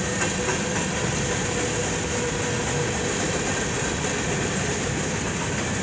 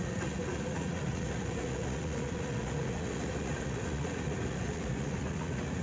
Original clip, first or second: first